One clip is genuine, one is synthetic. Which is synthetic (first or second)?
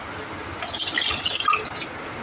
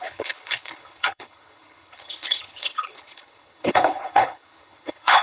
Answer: second